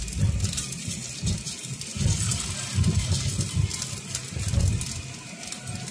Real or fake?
real